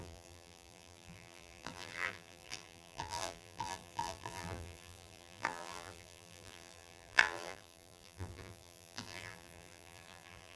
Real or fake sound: fake